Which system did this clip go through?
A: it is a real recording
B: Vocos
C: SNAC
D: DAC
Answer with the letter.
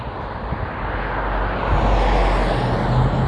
A